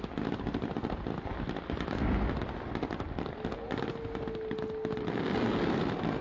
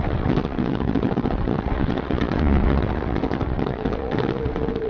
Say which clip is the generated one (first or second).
second